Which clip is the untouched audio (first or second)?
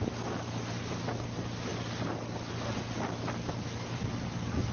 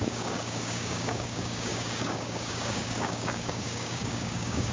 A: first